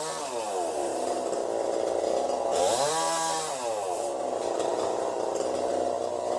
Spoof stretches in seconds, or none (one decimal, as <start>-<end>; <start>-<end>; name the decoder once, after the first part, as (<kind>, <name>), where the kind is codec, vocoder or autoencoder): none